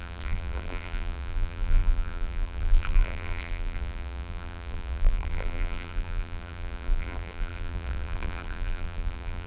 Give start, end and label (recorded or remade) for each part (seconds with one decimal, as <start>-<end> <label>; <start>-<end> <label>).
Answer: 0.0-9.5 remade